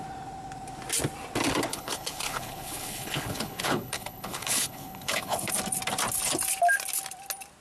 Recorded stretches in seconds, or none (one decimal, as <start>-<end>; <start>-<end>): 0.0-1.7; 5.5-7.6